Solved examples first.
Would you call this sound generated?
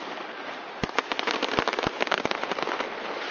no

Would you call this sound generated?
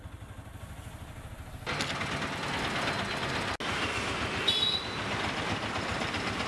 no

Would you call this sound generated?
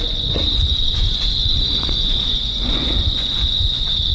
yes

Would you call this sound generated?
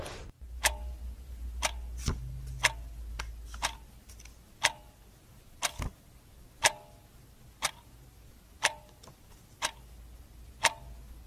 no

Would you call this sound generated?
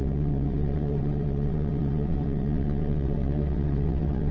yes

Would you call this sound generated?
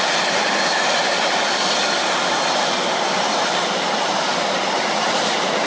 no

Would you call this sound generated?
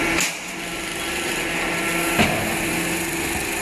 no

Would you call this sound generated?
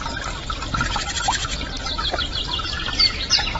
no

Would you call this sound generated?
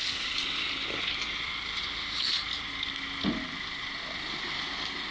no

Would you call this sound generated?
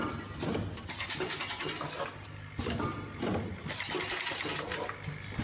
no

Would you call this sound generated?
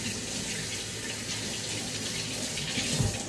no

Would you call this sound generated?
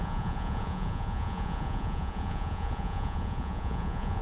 yes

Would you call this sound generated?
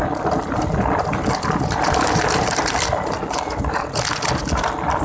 yes